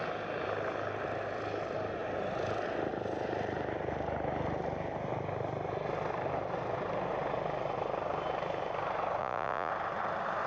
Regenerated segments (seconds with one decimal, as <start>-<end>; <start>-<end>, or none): 9.2-9.7